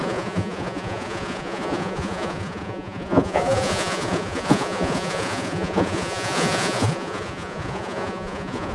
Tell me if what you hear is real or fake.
fake